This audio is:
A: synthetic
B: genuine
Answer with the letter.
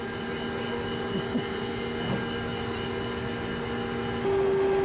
B